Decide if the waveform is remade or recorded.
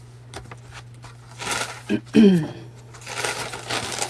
recorded